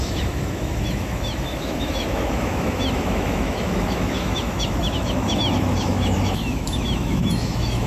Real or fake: fake